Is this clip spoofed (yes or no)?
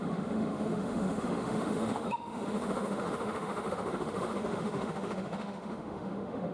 yes